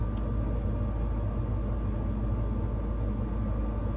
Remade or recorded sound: recorded